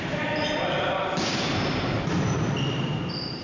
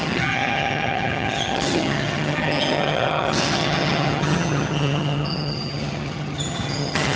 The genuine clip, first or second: first